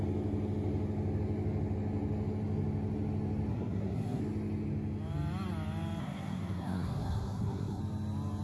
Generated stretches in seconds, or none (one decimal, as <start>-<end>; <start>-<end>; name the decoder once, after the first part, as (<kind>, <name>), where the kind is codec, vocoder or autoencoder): 3.5-4.2 (codec, SNAC); 6.0-7.8